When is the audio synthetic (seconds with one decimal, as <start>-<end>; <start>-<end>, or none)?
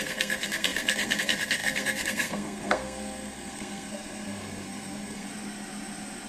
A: 0.0-5.3